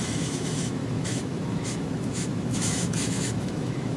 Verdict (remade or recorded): remade